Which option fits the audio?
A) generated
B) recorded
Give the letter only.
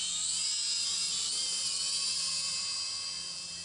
B